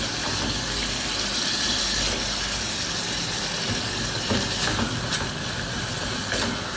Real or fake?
real